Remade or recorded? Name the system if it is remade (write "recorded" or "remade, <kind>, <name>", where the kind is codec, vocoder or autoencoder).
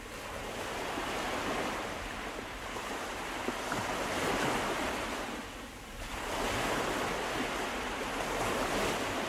recorded